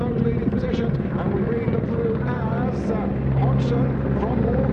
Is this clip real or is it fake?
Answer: real